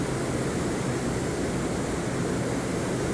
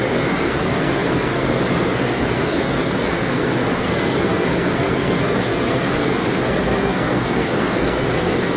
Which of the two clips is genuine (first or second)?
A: first